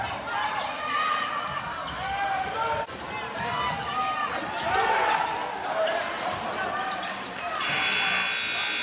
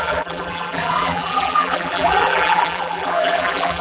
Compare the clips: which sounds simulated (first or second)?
second